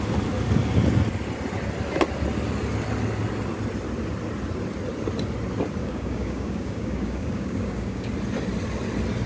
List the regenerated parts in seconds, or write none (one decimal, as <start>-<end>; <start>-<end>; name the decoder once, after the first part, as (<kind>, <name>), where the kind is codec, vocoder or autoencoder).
5.8-8.1 (codec, DAC)

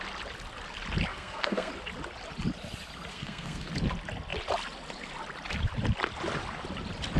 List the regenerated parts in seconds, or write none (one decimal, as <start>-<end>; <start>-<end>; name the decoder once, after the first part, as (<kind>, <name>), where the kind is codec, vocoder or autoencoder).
1.1-1.7 (codec, SNAC); 3.1-3.7

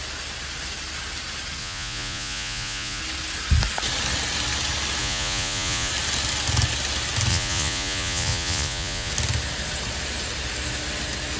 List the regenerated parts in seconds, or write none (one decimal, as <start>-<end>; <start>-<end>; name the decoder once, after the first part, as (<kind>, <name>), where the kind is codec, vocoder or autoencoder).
1.6-3.0 (vocoder, Vocos); 5.0-5.9; 7.3-9.1